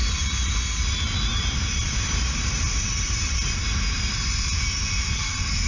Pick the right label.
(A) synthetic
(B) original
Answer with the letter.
A